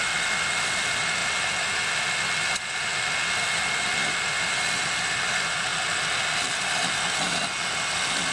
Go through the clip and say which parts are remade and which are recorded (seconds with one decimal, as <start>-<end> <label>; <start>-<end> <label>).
0.0-8.3 recorded